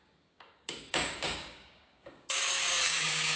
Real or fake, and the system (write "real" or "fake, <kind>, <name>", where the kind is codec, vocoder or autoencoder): fake, codec, DAC